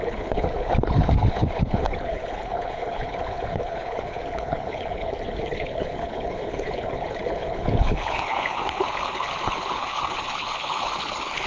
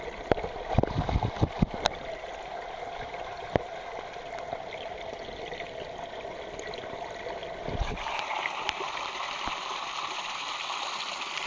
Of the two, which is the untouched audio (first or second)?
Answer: second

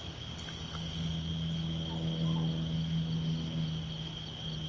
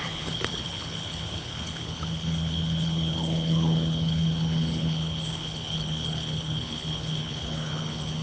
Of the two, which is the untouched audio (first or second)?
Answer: first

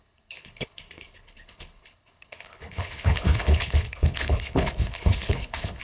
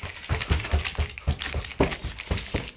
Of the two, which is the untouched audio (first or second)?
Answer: second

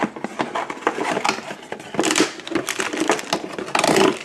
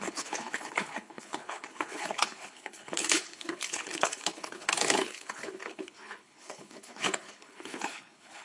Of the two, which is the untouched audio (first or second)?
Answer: first